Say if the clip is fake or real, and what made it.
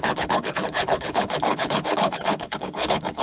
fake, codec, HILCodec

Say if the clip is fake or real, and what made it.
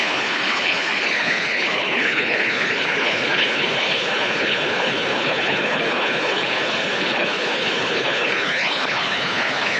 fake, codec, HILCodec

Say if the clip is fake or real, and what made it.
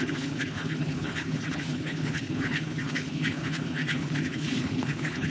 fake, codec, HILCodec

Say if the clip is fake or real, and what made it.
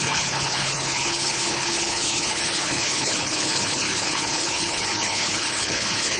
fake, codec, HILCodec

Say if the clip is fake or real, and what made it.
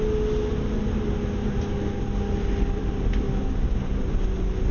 real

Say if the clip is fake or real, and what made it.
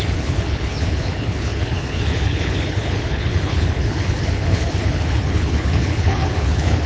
fake, codec, HILCodec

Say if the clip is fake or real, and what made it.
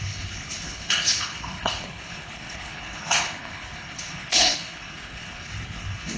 fake, codec, HILCodec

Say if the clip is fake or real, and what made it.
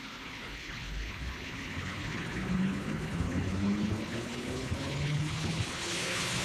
fake, codec, HILCodec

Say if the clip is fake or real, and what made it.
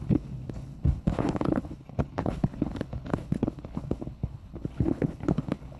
fake, codec, HILCodec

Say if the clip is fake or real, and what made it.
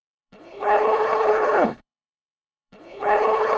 fake, codec, HILCodec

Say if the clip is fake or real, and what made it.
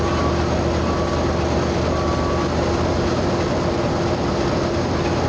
real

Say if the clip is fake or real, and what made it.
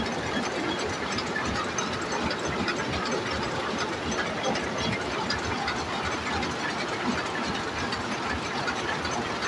real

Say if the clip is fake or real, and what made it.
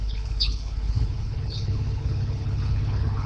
fake, codec, HILCodec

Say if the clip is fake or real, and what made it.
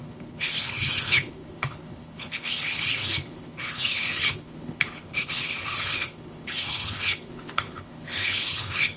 fake, codec, HILCodec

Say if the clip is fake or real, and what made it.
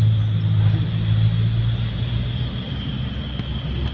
real